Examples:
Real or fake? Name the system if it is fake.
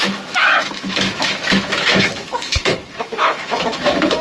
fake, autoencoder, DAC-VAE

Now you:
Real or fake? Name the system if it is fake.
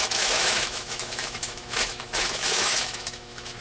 fake, autoencoder, DAC-VAE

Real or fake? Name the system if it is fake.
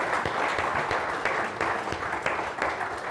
real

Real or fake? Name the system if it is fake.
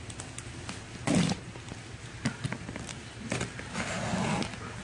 real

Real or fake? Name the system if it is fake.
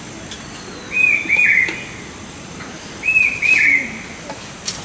real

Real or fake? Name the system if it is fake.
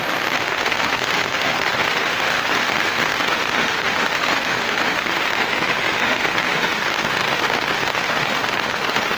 fake, autoencoder, DAC-VAE